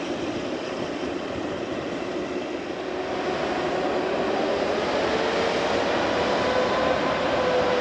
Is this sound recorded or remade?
recorded